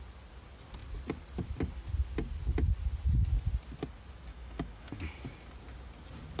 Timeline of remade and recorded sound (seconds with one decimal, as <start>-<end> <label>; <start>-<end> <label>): 0.0-4.3 recorded; 4.3-5.0 remade; 5.0-6.4 recorded